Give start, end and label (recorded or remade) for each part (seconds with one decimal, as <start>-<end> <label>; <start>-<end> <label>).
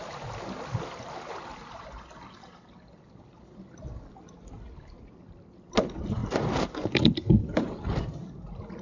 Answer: 0.0-8.8 recorded